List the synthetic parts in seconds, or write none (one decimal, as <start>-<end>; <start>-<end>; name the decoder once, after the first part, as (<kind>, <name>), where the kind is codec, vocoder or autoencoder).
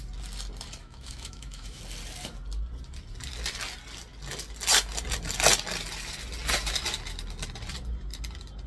0.8-1.8 (autoencoder, DAC-VAE)